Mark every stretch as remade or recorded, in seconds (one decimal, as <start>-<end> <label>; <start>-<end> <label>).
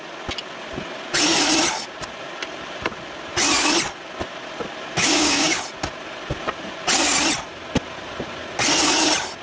0.0-5.0 recorded; 5.0-5.6 remade; 5.6-9.4 recorded